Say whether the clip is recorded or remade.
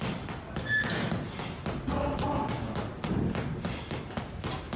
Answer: recorded